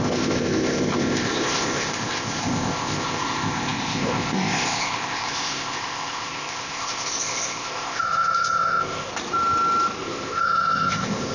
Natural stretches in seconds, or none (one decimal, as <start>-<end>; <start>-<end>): 9.1-10.0